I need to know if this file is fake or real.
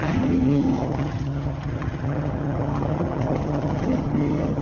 fake